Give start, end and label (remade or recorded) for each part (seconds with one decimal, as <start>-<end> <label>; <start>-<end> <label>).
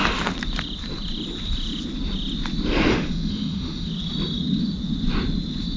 0.0-2.9 recorded; 2.9-3.9 remade; 3.9-5.8 recorded